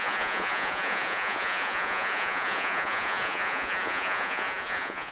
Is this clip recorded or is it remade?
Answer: remade